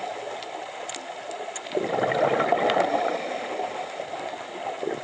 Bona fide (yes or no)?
yes